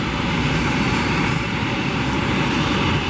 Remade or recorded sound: remade